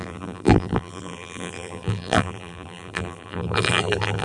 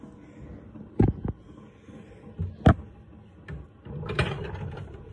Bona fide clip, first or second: second